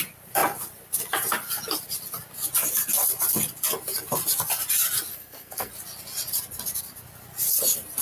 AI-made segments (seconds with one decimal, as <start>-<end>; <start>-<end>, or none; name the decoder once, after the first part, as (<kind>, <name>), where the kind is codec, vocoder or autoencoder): 5.1-5.7 (codec, SNAC)